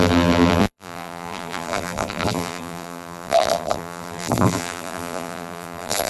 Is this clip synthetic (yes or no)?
yes